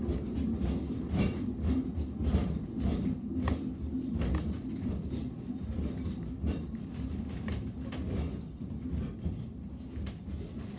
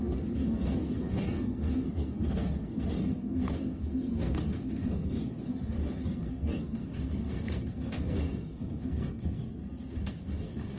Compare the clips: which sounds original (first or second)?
first